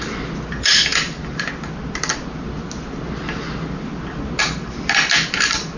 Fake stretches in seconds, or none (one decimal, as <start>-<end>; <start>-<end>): none